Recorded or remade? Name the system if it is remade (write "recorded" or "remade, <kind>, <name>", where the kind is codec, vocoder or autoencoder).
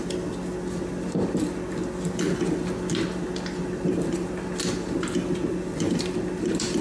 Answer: recorded